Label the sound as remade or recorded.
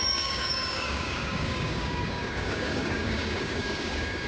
remade